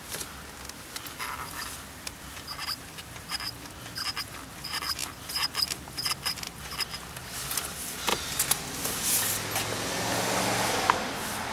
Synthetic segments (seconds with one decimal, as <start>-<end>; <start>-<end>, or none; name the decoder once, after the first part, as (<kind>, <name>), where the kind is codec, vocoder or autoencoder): none